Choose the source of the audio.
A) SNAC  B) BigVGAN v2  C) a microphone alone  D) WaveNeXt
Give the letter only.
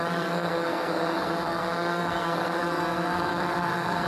A